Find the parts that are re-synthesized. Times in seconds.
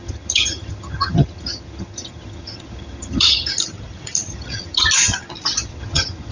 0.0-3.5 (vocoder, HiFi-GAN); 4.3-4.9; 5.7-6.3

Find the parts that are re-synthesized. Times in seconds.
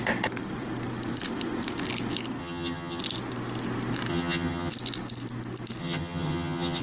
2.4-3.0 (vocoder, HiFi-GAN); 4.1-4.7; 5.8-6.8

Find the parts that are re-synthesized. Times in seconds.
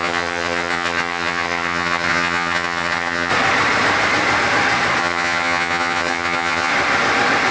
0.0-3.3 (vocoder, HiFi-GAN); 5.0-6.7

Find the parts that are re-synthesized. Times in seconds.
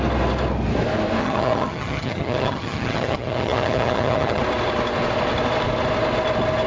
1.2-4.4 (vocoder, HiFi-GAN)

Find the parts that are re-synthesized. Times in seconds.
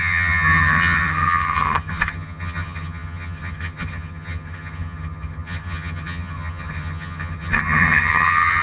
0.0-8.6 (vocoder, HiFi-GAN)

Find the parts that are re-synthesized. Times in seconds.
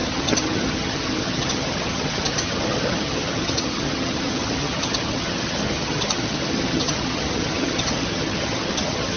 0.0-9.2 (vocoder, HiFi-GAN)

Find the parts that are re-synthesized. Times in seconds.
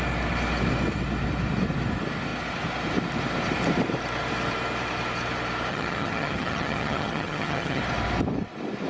5.7-7.8 (vocoder, HiFi-GAN)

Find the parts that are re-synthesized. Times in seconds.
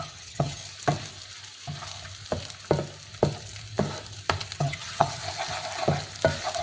0.0-0.6 (vocoder, HiFi-GAN); 4.6-5.2